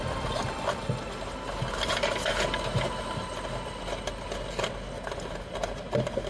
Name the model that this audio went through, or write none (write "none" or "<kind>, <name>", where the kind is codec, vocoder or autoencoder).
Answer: none